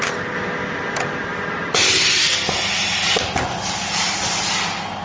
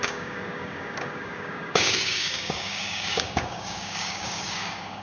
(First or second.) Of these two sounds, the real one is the first